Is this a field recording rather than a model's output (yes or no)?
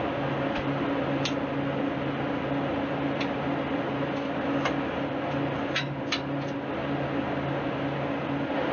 yes